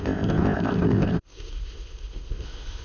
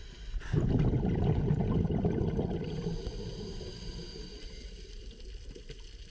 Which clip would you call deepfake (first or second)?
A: first